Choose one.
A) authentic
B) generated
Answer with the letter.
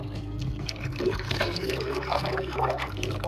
B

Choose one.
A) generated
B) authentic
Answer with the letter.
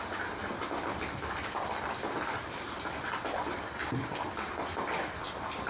B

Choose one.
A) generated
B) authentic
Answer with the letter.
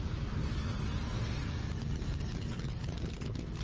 B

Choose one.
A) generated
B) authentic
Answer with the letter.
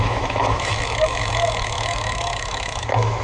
A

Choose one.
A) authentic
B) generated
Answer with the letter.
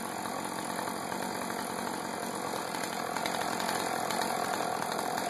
A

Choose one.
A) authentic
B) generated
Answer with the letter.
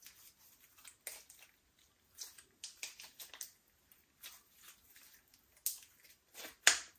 A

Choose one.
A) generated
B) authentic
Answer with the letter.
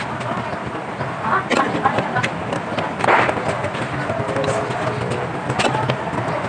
B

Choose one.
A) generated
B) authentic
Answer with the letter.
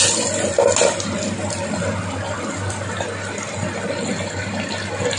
B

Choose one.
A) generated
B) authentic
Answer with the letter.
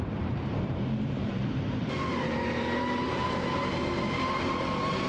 A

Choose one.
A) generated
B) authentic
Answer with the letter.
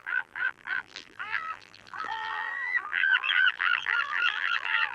A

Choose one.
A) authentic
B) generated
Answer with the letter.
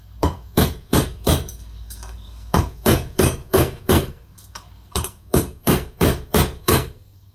B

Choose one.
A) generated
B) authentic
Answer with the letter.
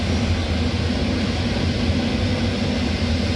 B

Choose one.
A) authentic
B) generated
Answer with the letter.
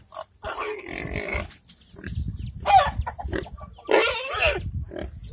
A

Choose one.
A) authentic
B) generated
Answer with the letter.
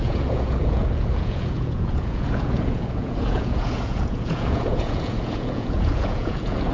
B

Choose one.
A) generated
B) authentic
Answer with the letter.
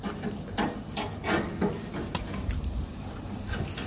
B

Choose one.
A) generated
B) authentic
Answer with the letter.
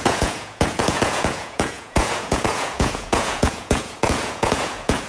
A